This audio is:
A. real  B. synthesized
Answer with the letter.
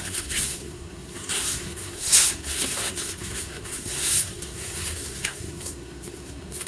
B